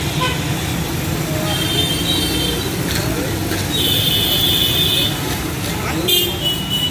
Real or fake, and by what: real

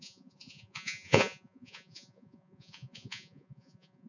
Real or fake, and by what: fake, vocoder, Vocos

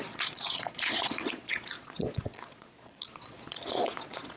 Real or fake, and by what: fake, vocoder, Vocos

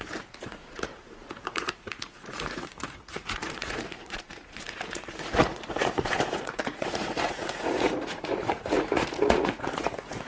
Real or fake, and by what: fake, vocoder, Vocos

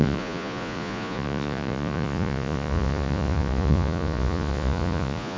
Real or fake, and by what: fake, vocoder, Vocos